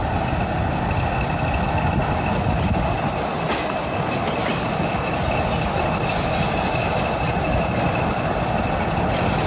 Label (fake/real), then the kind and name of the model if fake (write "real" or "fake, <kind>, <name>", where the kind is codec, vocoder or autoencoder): real